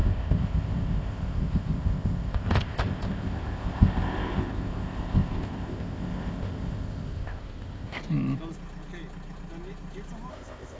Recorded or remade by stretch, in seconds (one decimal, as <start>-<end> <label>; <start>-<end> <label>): 0.0-8.0 remade; 8.0-10.3 recorded; 10.3-10.8 remade